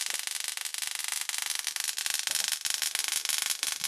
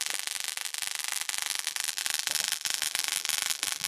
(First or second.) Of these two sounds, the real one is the first